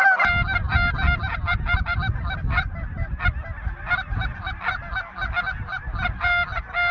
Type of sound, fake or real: real